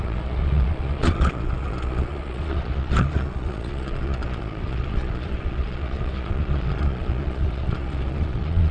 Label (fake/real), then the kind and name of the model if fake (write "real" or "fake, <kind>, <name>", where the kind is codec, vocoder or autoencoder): fake, vocoder, Vocos